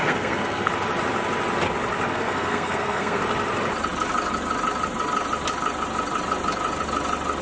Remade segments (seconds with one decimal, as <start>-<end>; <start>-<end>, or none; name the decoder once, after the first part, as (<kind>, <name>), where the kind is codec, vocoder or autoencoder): 0.0-0.7 (codec, SNAC); 2.1-3.2